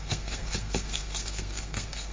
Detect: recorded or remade remade